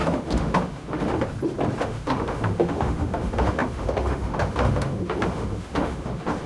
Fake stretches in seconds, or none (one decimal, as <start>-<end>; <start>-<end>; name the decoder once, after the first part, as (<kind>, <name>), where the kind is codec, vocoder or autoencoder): 0.0-1.1 (autoencoder, DAC-VAE); 1.8-6.5

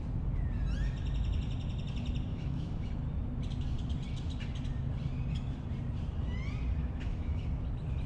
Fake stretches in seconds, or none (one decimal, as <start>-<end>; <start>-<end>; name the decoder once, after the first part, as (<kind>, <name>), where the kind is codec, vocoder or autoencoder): 2.3-2.9 (autoencoder, DAC-VAE); 6.8-7.4

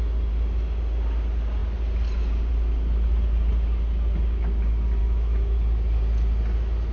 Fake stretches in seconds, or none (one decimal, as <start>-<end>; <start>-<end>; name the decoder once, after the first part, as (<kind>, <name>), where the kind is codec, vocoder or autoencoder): 5.0-5.6 (autoencoder, DAC-VAE)

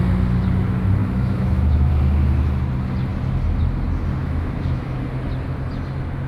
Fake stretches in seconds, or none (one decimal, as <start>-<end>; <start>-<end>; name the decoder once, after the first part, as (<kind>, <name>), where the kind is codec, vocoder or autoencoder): 1.0-1.9 (autoencoder, DAC-VAE); 4.2-5.0

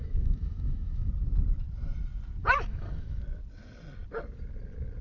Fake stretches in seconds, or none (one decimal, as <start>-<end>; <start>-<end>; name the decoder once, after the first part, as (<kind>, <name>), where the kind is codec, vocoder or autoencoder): 0.0-1.1 (autoencoder, DAC-VAE); 2.4-3.2

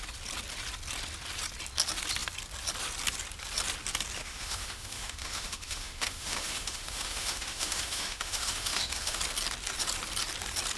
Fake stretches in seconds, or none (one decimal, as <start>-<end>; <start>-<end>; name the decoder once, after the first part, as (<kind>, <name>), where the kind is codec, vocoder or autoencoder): 4.2-9.2 (autoencoder, DAC-VAE)

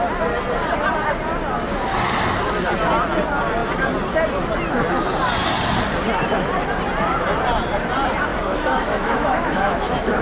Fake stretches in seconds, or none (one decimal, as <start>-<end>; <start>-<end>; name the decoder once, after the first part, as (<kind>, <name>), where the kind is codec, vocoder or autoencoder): 8.3-10.2 (autoencoder, DAC-VAE)

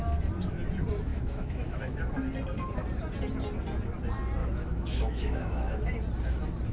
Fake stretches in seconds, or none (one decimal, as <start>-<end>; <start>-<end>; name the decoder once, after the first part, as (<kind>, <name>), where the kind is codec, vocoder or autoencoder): 1.1-2.0 (autoencoder, DAC-VAE); 4.4-5.8